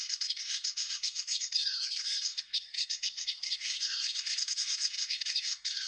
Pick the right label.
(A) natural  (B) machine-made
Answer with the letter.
B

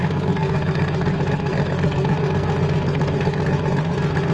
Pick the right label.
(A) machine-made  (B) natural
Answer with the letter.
A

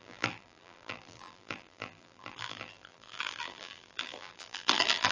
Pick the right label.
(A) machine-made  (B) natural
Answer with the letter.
A